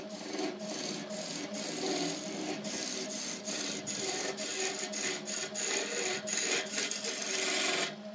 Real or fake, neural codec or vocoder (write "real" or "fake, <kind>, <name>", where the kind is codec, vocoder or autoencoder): real